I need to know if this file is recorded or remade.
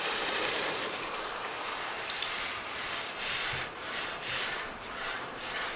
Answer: remade